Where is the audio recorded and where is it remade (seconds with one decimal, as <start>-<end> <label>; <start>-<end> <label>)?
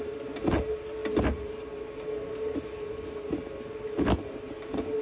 0.0-5.0 recorded